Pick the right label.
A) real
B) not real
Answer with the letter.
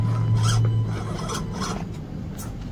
A